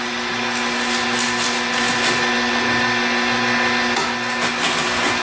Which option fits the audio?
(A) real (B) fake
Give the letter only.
A